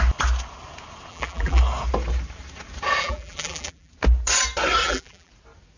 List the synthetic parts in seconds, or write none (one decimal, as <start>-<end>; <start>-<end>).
1.1-1.6; 3.0-3.9; 4.8-5.3